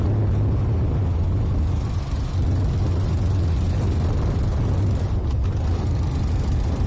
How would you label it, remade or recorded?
recorded